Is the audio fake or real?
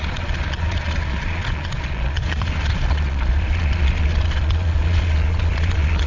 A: fake